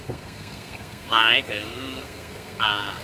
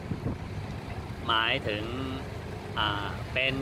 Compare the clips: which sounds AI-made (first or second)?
first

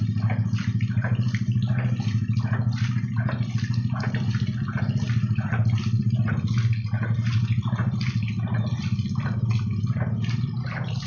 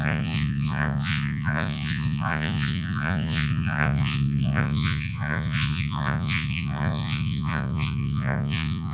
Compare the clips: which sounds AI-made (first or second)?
second